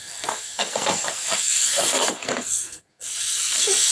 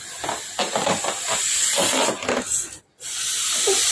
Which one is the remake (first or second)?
first